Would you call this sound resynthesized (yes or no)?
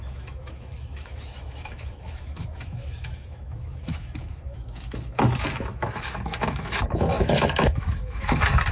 yes